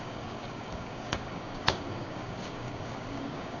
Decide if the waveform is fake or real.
fake